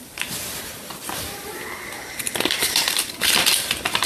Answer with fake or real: real